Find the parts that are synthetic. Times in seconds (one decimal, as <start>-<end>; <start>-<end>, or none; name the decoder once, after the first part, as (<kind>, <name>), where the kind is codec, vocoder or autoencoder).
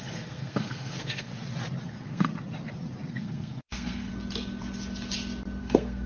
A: 0.0-1.3 (codec, SNAC); 1.9-2.3; 3.1-4.1; 5.6-6.1